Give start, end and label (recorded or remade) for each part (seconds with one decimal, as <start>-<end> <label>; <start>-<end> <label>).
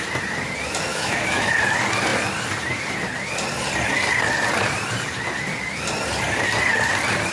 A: 0.0-0.9 recorded; 0.9-1.5 remade; 1.5-7.3 recorded